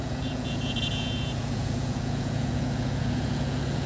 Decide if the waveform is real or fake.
fake